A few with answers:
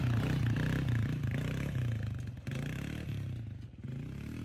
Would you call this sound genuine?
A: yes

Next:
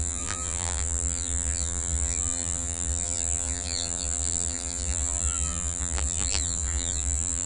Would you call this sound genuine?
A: no